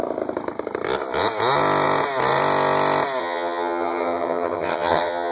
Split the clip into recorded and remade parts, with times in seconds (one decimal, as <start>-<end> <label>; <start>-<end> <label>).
0.0-3.2 recorded; 3.2-5.3 remade